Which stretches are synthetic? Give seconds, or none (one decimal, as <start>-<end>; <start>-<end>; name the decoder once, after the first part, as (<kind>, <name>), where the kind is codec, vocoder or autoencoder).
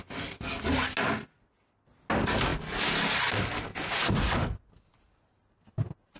none